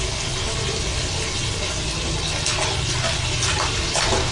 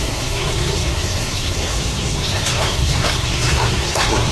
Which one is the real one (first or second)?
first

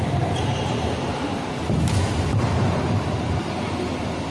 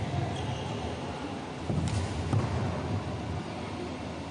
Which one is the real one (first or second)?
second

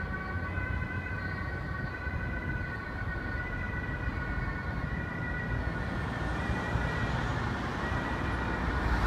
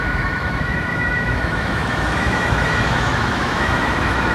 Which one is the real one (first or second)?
first